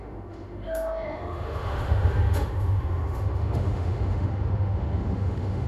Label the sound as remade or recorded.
remade